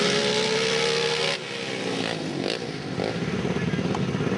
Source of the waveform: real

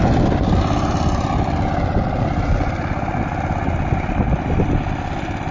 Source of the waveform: real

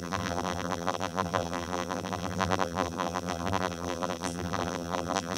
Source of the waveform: fake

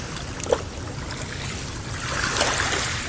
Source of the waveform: real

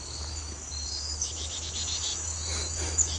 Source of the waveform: fake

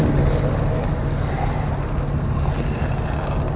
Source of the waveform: real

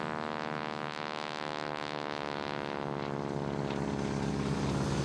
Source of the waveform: real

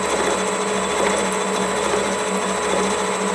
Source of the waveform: real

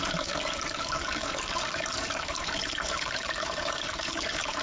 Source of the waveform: fake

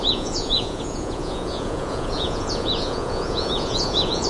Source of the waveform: fake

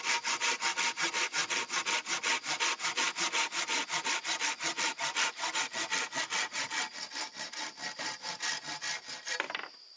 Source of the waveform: real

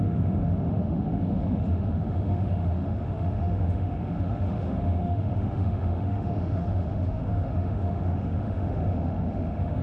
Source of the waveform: fake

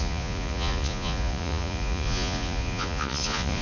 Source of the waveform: fake